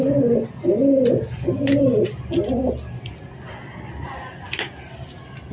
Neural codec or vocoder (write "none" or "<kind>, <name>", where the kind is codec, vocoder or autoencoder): none